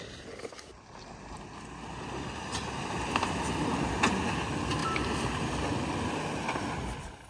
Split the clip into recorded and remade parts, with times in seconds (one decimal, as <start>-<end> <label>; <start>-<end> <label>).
0.0-7.3 recorded